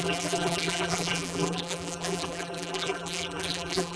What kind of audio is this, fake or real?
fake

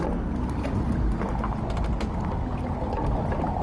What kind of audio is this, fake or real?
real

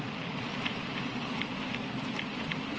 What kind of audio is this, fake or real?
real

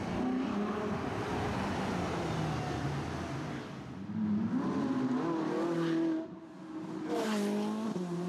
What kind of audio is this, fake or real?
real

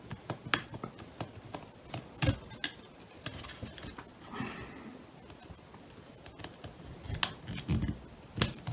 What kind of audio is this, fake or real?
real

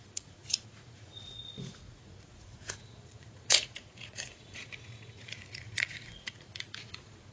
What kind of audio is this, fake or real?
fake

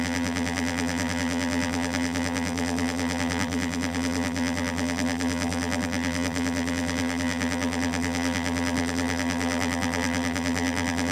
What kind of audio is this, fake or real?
fake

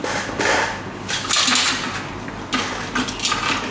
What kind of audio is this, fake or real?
real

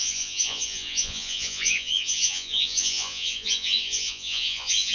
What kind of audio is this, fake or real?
fake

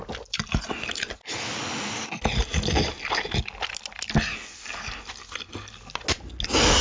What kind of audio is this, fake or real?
real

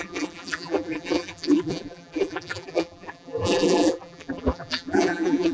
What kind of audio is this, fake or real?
fake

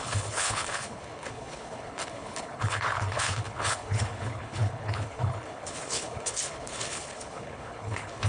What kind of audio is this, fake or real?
fake